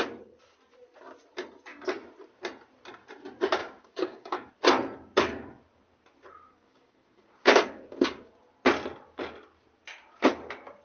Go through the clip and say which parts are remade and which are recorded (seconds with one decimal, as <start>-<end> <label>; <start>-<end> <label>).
0.0-3.6 recorded; 3.6-4.5 remade; 4.5-6.5 recorded; 6.5-8.3 remade; 8.3-10.8 recorded